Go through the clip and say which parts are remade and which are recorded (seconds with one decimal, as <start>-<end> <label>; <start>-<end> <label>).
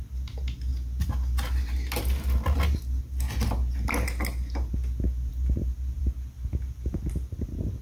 0.0-7.8 recorded